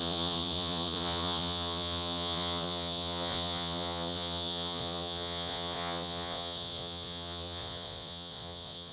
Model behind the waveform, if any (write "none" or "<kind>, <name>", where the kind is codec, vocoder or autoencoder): vocoder, Vocos